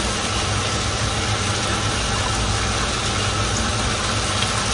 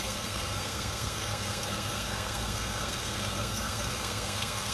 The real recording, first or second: first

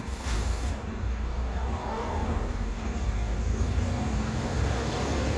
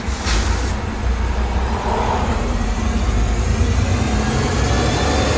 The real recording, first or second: second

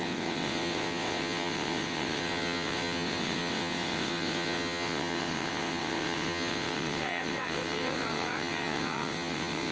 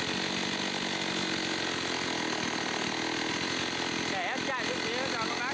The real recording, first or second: second